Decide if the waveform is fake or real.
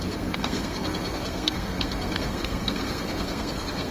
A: fake